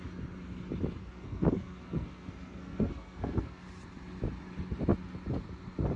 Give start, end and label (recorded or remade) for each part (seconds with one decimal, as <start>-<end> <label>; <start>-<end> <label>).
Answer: 0.0-1.0 recorded; 1.0-3.6 remade; 3.6-6.0 recorded